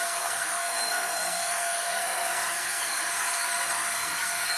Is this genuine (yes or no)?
no